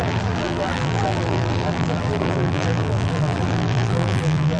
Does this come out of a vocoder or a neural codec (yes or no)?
yes